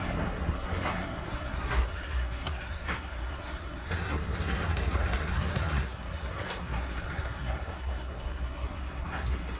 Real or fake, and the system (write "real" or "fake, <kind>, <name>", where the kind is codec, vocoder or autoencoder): fake, codec, SNAC